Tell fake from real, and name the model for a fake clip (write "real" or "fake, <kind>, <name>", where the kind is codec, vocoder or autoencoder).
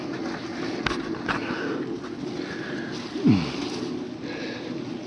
real